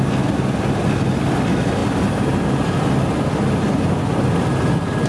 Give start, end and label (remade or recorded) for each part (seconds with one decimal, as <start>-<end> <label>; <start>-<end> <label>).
0.0-5.1 recorded